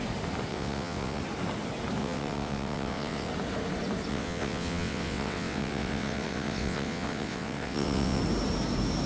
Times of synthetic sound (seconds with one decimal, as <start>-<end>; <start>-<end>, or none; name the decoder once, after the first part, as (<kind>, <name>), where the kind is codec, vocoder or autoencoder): 0.5-1.2 (vocoder, WaveNeXt); 2.0-3.3; 4.1-8.2

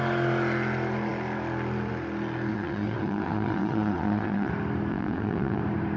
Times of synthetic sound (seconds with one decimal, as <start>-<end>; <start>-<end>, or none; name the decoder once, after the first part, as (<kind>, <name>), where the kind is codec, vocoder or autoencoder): 2.5-4.5 (vocoder, WaveNeXt); 4.9-5.6

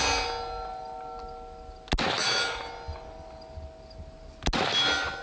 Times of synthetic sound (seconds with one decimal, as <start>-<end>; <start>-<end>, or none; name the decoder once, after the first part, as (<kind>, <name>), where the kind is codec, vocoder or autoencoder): none

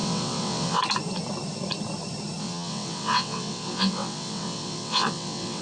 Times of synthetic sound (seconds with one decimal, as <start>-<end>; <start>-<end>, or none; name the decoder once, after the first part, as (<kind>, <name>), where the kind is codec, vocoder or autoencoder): 0.0-0.8 (vocoder, WaveNeXt); 2.4-5.6

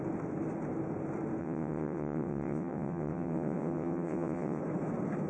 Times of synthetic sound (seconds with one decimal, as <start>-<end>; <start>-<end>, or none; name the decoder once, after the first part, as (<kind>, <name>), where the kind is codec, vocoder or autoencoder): 1.4-4.6 (vocoder, WaveNeXt)

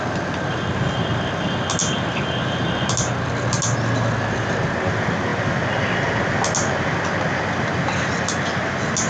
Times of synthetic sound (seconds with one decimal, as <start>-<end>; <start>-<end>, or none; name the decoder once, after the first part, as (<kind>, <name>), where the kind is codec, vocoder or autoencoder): none